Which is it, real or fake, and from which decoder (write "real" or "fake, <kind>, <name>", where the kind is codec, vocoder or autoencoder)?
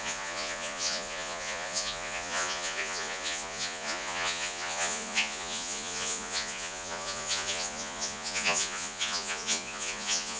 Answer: fake, vocoder, Vocos